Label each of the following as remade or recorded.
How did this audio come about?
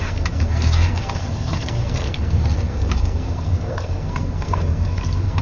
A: remade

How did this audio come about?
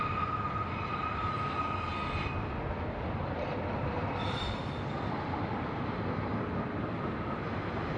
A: recorded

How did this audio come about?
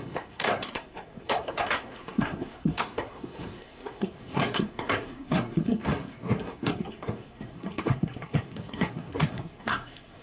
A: remade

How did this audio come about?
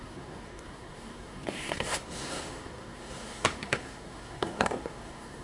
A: remade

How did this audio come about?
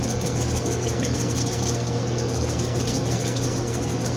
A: remade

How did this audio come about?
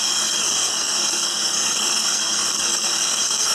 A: remade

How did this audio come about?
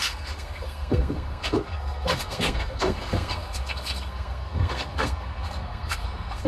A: remade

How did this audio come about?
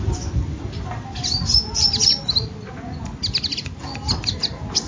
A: recorded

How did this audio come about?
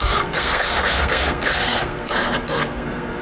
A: remade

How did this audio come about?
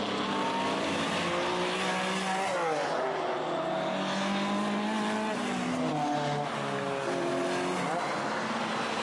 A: recorded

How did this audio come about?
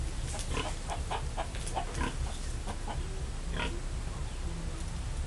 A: recorded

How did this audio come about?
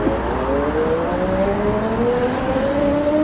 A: recorded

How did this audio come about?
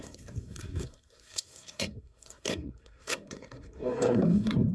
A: remade